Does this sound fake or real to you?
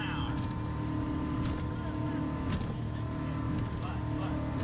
real